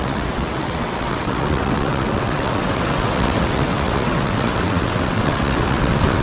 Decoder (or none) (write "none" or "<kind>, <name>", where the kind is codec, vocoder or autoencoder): vocoder, WaveNeXt